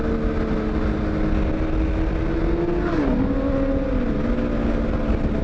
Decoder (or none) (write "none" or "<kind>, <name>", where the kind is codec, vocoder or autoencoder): none